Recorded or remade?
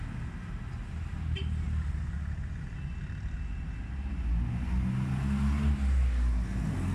recorded